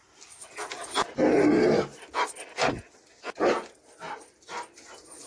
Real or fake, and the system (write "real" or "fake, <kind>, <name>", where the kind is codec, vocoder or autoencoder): real